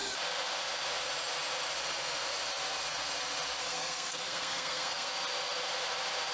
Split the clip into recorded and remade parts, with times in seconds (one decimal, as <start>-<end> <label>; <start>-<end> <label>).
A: 0.0-3.6 recorded; 3.6-5.1 remade; 5.1-6.3 recorded